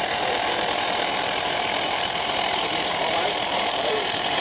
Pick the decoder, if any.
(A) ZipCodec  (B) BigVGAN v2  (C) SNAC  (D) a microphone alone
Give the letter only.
B